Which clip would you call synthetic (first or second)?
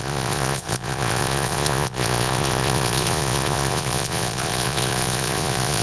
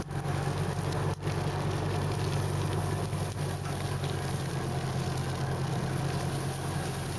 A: first